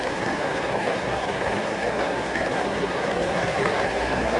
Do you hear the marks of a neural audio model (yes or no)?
yes